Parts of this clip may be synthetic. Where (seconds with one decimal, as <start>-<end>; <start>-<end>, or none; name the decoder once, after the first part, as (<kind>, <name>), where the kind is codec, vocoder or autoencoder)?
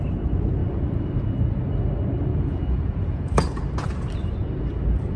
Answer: 2.3-3.6 (vocoder, Vocos)